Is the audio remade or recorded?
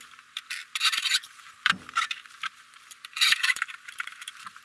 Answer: remade